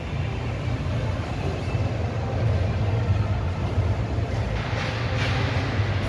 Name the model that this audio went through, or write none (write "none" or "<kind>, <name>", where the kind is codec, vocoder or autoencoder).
none